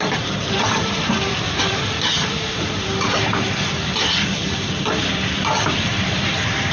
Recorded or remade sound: remade